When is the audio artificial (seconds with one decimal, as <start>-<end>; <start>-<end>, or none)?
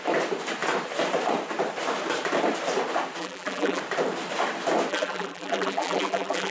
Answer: 3.2-3.8; 4.9-6.5